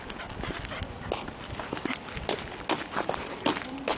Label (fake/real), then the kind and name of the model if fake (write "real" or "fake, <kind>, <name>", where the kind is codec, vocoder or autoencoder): real